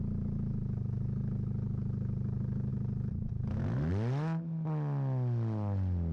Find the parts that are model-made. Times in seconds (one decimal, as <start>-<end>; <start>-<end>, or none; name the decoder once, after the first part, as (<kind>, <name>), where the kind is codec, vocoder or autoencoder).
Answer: none